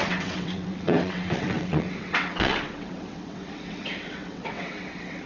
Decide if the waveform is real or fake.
fake